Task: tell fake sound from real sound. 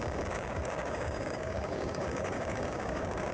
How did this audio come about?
fake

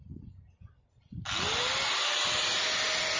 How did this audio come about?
real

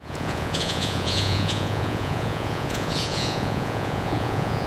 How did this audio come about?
fake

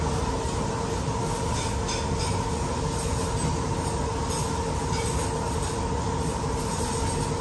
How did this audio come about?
real